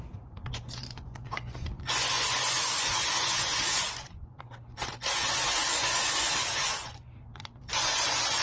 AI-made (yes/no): yes